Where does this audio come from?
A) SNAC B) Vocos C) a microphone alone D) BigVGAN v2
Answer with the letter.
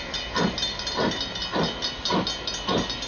C